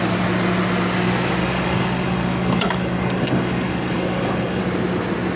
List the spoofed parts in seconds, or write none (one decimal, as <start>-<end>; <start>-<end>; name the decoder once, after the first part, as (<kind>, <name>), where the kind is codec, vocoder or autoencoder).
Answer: 1.4-4.6 (codec, DAC)